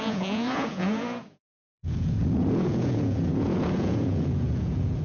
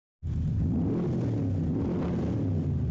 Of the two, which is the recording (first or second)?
second